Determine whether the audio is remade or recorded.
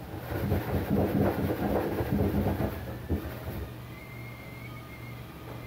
recorded